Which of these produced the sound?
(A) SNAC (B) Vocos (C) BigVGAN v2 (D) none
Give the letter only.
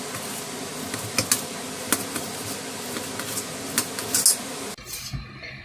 D